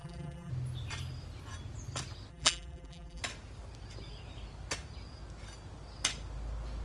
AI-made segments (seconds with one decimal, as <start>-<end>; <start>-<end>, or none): 0.0-0.5; 2.3-3.2